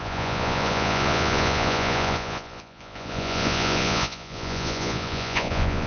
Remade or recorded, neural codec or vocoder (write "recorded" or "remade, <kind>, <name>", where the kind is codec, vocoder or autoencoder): remade, vocoder, Vocos